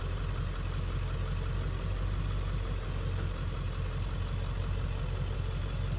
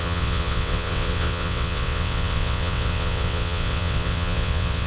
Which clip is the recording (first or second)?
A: first